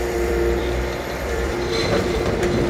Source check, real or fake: fake